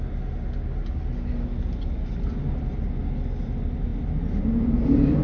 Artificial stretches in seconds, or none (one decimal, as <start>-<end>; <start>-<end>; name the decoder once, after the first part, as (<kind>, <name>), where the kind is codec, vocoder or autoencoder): none